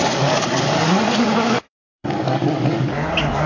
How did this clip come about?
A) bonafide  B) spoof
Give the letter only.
B